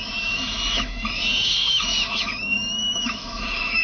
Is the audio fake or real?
fake